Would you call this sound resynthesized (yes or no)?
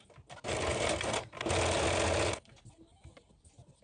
no